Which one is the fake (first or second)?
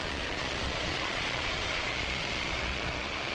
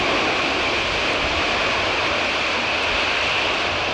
first